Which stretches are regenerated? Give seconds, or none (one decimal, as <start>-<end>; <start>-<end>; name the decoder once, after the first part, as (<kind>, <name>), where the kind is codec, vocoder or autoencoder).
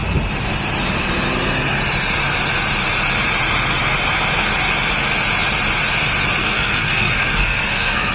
6.4-8.1 (codec, SNAC)